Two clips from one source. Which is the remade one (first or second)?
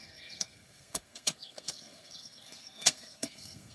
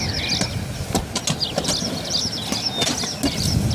first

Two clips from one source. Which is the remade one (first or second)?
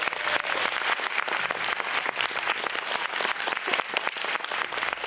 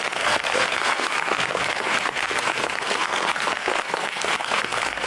second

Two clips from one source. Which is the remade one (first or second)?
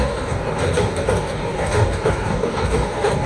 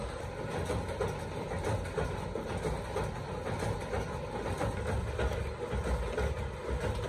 first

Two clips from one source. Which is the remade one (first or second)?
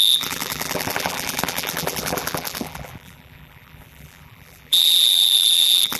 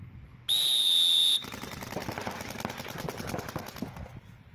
first